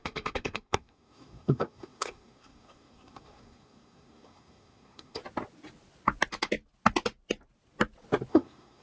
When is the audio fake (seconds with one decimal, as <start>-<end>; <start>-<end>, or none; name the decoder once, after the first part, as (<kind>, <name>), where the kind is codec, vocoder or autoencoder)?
0.0-5.2 (codec, SNAC); 8.3-8.8